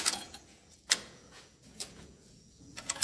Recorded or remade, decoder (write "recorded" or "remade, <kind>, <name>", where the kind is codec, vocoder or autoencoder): remade, vocoder, Vocos